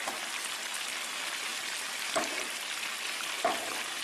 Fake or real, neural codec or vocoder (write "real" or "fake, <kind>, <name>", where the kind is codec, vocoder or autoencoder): real